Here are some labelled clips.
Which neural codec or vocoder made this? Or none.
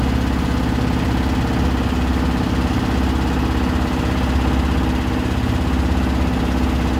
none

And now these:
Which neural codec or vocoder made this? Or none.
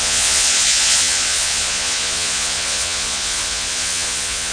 vocoder, Vocos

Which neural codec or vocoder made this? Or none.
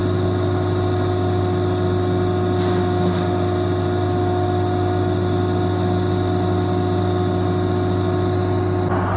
none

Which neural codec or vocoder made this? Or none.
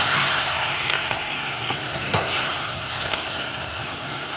codec, SNAC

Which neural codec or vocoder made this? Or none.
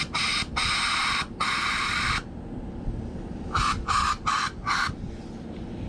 none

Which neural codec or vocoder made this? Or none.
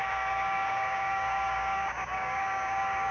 codec, DAC